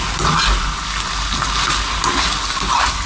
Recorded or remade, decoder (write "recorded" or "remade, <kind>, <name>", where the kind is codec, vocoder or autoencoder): recorded